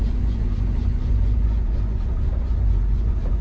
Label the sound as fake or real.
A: fake